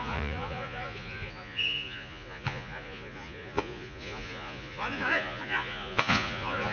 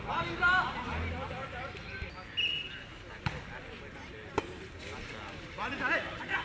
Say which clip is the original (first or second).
second